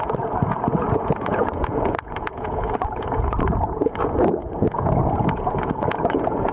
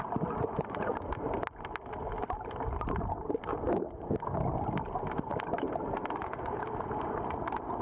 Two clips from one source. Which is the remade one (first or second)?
first